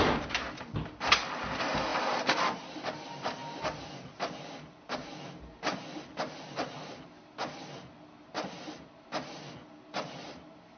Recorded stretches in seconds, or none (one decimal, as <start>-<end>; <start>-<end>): 0.0-10.8